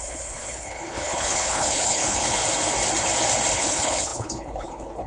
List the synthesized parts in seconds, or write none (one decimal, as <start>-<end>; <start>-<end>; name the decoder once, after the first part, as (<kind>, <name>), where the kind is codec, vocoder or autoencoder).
0.0-2.4 (codec, HILCodec); 3.5-5.1